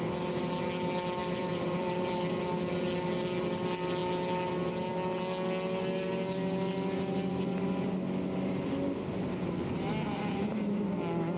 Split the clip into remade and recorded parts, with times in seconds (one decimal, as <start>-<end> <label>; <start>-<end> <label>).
0.0-1.2 recorded; 1.2-2.3 remade; 2.3-10.5 recorded; 10.5-11.0 remade; 11.0-11.4 recorded